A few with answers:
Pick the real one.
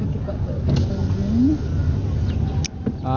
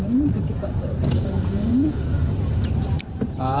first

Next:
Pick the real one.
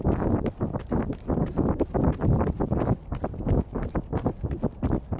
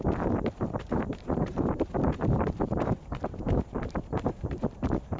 first